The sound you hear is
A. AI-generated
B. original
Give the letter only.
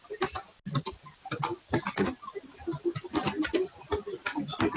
B